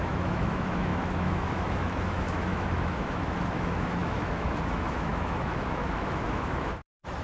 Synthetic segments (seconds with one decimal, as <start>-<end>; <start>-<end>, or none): 0.0-7.2